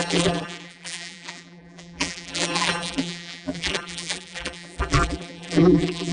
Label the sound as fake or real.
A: fake